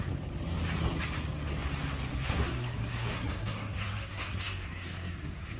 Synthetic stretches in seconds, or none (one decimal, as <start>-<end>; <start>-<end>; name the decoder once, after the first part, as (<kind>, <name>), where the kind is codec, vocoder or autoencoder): 2.1-5.6 (codec, SNAC)